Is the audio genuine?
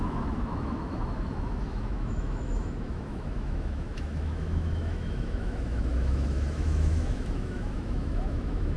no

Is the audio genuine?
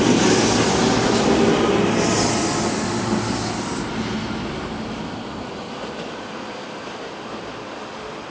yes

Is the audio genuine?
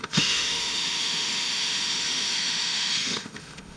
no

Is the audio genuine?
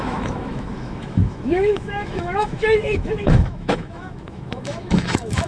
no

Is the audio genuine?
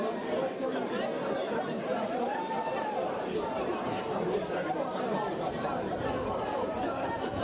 no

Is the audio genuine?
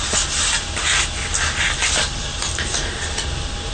yes